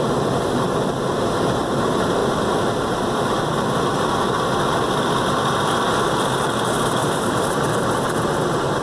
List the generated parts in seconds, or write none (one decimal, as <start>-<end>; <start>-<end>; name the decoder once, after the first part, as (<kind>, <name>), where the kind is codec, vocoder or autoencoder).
7.0-7.9 (vocoder, BigVGAN v2)